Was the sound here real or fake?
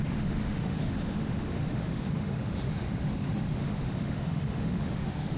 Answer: fake